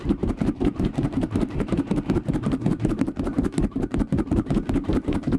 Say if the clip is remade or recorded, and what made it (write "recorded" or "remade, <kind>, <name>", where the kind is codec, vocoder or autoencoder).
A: remade, vocoder, BigVGAN v2